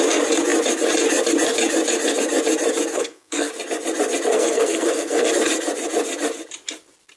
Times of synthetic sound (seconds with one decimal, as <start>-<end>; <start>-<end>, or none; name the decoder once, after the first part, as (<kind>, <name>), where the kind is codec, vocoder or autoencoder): 2.9-3.5 (codec, SNAC); 4.3-5.3